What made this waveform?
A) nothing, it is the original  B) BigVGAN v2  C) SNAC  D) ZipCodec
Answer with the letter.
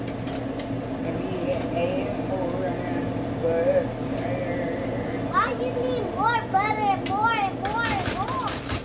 A